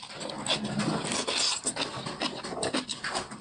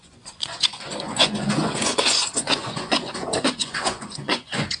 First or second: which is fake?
second